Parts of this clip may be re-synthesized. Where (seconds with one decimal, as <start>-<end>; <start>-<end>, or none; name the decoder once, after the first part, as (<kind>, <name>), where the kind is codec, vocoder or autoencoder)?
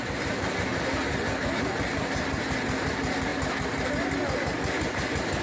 none